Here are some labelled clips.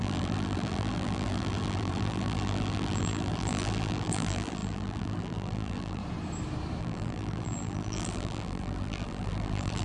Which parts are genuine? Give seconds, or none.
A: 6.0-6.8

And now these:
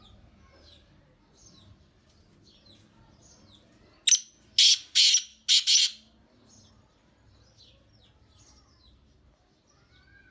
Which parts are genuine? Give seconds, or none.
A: 0.0-10.3

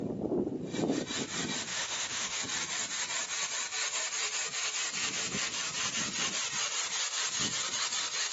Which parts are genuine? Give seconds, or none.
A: 0.0-1.7; 2.4-8.3

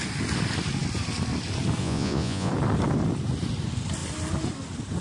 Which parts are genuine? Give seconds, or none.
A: 0.0-1.8; 2.5-5.0

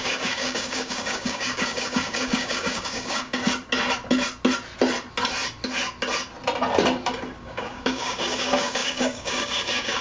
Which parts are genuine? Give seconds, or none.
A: 3.4-7.4

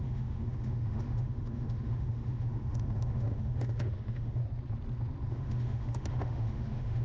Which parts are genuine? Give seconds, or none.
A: 4.4-5.3

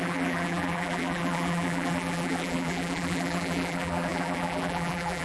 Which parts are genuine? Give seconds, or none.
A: none